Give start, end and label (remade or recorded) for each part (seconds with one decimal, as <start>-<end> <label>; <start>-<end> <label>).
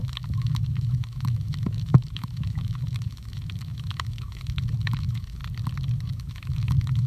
0.0-5.4 remade; 5.4-6.1 recorded; 6.1-7.1 remade